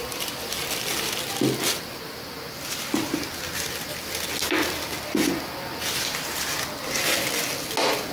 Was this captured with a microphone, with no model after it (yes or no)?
yes